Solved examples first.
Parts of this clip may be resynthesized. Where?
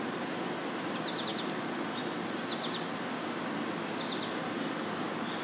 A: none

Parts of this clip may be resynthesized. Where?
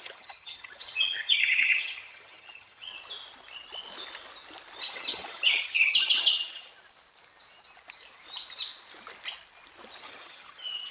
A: 0.0-2.9 (vocoder, HiFi-GAN); 4.8-6.7; 10.0-10.9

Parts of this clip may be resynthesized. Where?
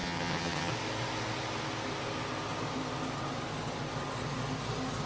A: 0.0-0.7 (vocoder, HiFi-GAN)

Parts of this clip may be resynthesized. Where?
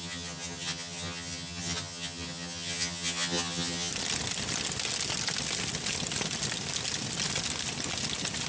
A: 0.0-3.9 (vocoder, HiFi-GAN)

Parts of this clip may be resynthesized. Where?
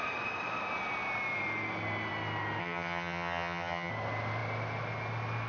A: 2.6-3.9 (vocoder, HiFi-GAN)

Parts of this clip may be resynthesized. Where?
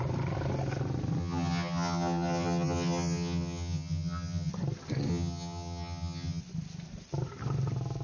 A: 1.2-4.5 (vocoder, HiFi-GAN); 5.1-6.4